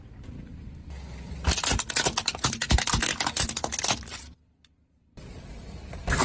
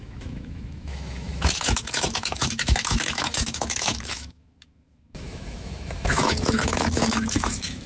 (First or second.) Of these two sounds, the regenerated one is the second